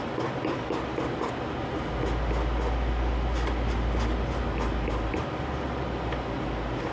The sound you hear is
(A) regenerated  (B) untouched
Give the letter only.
B